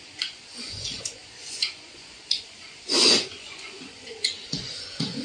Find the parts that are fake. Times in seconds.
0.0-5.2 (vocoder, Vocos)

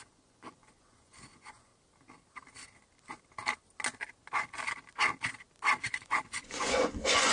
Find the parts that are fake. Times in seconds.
0.0-1.7 (vocoder, Vocos); 5.8-7.3

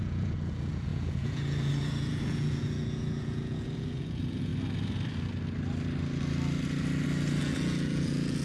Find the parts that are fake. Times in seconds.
0.0-4.5 (vocoder, Vocos); 7.4-8.4